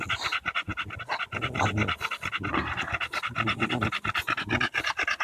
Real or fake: real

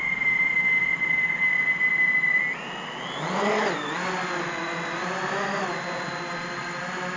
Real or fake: real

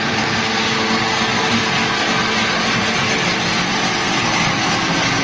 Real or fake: real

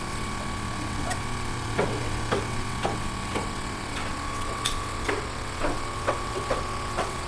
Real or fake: fake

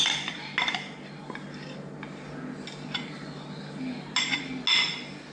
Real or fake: real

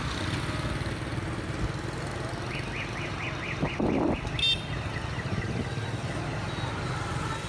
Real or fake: real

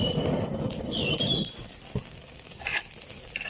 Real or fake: real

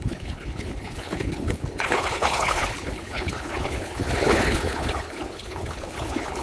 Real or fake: fake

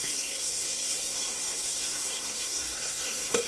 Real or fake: fake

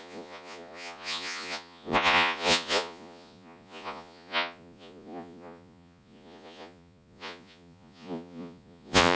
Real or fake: fake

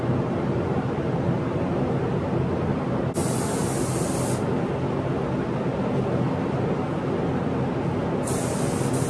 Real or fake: real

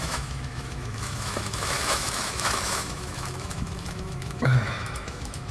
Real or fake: fake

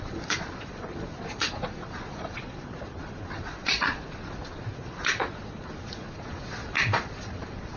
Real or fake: fake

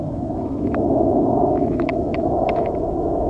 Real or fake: fake